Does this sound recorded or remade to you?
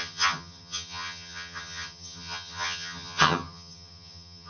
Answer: remade